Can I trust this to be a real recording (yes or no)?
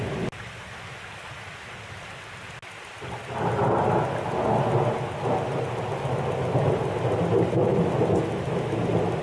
yes